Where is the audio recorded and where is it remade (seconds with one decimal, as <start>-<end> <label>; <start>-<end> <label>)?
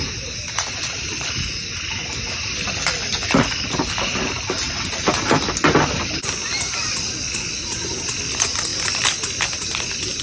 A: 0.0-10.2 recorded